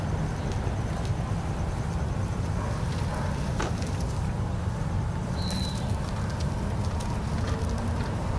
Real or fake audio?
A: real